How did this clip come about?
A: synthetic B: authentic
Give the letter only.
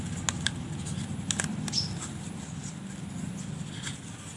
B